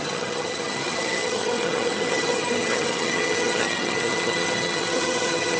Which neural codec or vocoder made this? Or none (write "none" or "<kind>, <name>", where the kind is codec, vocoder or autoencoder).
vocoder, HiFi-GAN